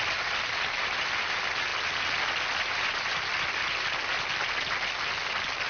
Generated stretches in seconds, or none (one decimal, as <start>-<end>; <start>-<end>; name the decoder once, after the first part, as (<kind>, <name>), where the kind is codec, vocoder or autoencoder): none